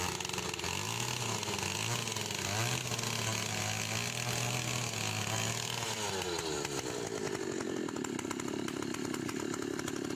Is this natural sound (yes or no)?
yes